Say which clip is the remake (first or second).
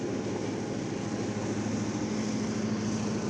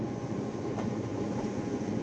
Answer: second